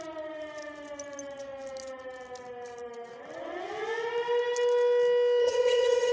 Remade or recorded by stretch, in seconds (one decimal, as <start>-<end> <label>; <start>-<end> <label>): 0.0-5.4 recorded; 5.4-6.1 remade